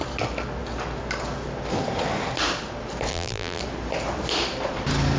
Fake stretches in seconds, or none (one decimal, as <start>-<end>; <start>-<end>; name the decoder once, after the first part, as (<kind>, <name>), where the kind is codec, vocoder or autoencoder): 3.1-3.6 (vocoder, BigVGAN v2)